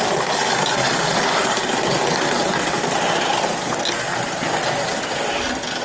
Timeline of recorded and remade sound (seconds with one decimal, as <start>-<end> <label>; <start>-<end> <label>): 0.0-5.8 recorded